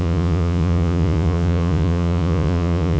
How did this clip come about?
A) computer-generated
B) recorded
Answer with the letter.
A